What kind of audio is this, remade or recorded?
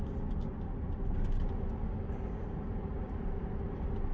recorded